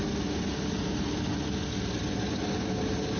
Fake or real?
real